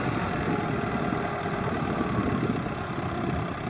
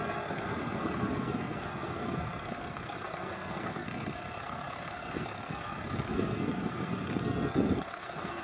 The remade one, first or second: second